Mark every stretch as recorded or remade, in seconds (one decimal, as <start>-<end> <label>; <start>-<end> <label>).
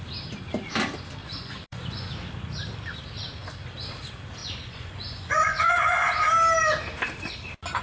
0.0-1.2 recorded; 1.2-2.1 remade; 2.1-4.4 recorded; 4.4-6.1 remade; 6.1-7.8 recorded